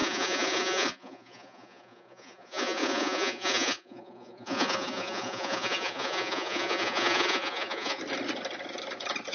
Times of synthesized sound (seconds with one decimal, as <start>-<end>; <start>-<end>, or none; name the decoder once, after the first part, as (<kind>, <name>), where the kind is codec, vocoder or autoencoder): 0.0-8.0 (vocoder, Vocos)